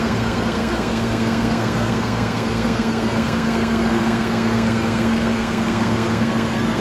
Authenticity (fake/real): fake